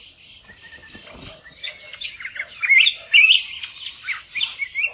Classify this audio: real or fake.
real